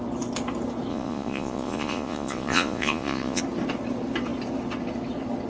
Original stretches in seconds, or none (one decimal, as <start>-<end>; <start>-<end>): 0.0-0.9; 3.4-5.5